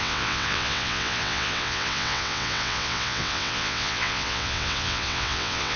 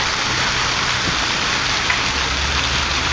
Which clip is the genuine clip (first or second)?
second